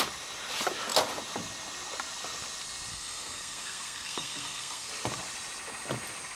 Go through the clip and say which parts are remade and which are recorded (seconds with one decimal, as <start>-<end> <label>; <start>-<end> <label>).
0.0-2.9 recorded; 2.9-4.9 remade; 4.9-6.4 recorded